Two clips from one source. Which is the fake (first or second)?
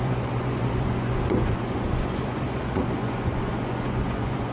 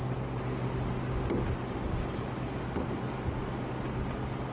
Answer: first